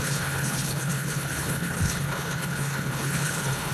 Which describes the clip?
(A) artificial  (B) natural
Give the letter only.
A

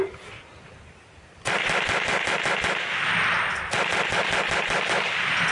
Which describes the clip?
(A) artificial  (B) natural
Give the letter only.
B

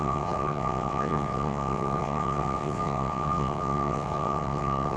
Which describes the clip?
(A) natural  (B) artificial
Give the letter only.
B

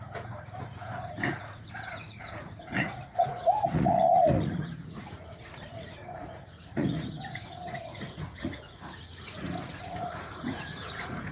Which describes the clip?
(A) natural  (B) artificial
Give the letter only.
B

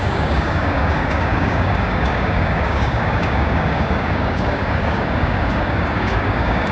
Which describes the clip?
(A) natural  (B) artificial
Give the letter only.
B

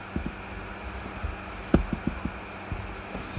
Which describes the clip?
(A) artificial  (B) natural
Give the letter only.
B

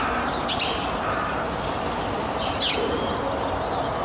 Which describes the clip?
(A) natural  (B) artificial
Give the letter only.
A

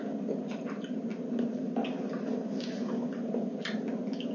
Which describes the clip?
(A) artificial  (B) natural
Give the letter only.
B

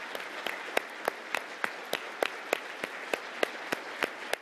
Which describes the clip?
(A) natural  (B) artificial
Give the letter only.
A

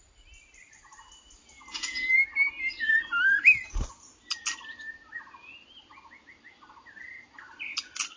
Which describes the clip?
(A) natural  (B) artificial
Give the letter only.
A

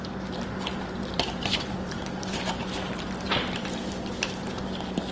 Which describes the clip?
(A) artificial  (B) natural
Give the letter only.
A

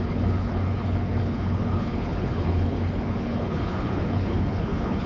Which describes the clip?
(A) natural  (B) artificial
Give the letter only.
B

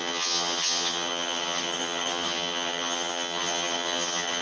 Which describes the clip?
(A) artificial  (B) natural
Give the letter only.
A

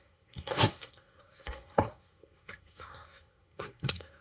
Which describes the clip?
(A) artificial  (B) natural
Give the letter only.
A